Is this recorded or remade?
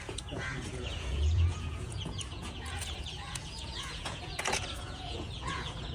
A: remade